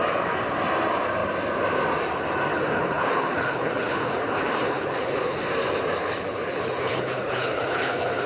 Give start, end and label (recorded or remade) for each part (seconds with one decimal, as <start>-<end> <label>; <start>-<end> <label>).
0.0-2.5 recorded; 2.5-5.5 remade; 5.5-6.0 recorded; 6.0-8.3 remade